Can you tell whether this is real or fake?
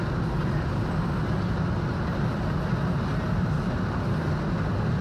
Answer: real